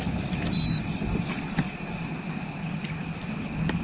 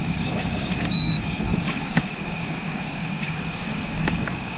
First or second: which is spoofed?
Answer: second